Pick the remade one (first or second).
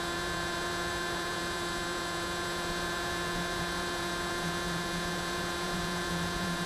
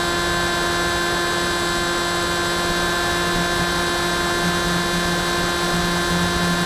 first